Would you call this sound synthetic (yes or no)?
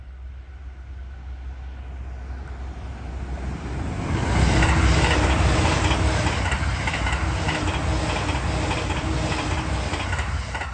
no